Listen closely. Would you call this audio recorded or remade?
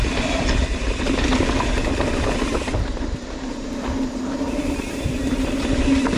remade